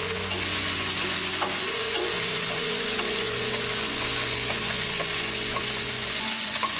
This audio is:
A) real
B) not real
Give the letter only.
B